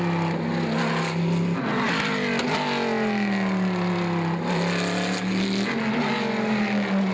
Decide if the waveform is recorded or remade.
recorded